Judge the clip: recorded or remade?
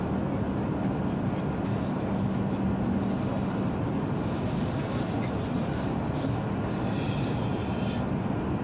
recorded